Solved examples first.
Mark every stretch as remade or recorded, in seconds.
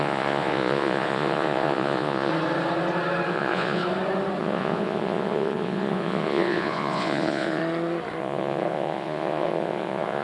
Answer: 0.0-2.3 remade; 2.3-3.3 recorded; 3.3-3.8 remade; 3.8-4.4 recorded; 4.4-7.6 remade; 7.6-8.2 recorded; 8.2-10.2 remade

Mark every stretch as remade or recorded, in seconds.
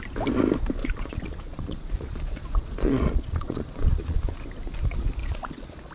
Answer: 0.0-0.8 recorded; 0.8-4.3 remade; 4.3-5.2 recorded; 5.2-5.9 remade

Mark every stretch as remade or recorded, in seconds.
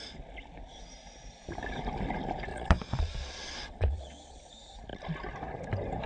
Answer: 0.0-2.5 recorded; 2.5-4.5 remade; 4.5-6.1 recorded